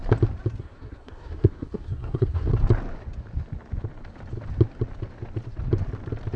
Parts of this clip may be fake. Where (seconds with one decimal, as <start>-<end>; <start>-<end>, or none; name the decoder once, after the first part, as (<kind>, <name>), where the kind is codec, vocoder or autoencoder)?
0.6-2.5 (codec, SNAC)